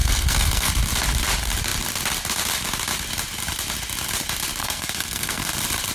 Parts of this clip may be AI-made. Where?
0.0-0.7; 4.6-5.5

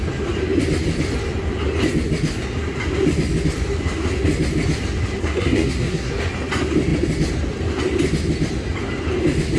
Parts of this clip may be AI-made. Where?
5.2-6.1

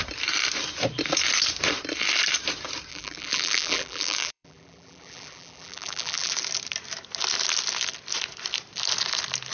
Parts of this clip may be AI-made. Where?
2.9-6.3

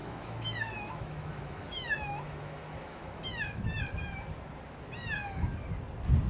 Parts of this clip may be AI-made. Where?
0.0-3.8